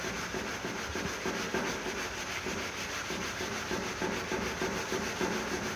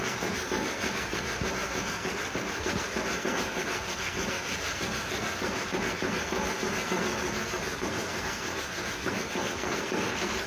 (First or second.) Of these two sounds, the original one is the first